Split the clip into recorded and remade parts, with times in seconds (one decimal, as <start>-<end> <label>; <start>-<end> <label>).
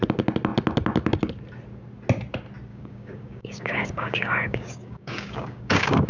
0.0-2.7 recorded; 2.7-6.1 remade